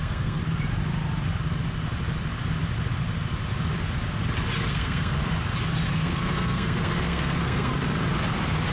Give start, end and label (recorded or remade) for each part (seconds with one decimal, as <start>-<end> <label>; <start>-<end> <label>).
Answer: 0.0-0.4 remade; 0.4-4.7 recorded; 4.7-5.2 remade; 5.2-5.9 recorded; 5.9-7.7 remade; 7.7-8.7 recorded